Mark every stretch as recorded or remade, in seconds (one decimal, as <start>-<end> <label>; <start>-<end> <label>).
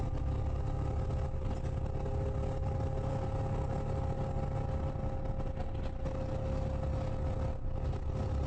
0.0-8.5 recorded